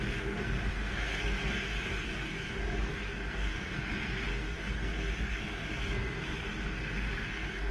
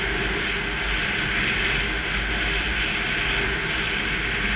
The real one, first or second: second